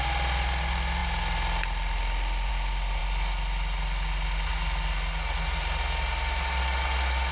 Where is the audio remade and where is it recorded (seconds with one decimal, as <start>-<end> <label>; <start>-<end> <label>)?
0.0-7.3 recorded